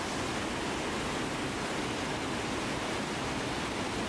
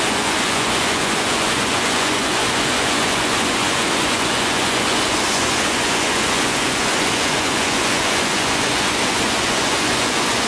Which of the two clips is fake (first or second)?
second